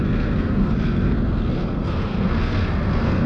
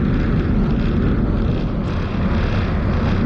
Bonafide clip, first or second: second